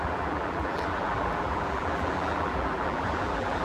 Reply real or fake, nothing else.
fake